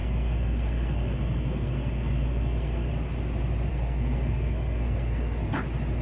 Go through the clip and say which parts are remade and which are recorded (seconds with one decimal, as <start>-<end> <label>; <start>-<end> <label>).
0.0-2.9 remade; 2.9-3.7 recorded; 3.7-5.5 remade; 5.5-6.0 recorded